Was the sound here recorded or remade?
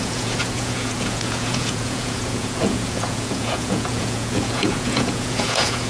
remade